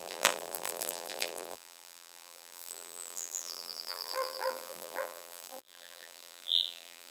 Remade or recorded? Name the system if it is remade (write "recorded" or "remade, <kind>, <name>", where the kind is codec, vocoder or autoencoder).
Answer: remade, vocoder, BigVGAN v2